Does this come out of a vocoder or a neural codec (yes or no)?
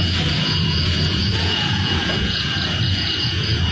yes